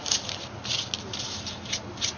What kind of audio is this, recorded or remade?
recorded